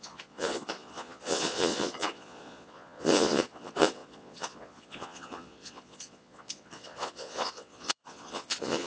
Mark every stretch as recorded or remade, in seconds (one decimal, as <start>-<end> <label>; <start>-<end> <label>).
0.0-8.9 remade